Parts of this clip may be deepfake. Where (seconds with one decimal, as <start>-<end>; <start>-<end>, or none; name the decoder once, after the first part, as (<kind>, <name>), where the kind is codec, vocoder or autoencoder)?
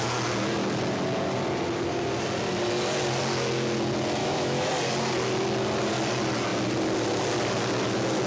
4.2-4.7 (autoencoder, DAC-VAE)